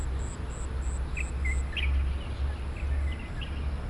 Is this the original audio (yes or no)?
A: yes